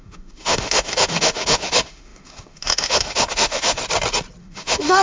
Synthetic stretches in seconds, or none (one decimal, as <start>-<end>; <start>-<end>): 0.0-3.8; 4.4-5.0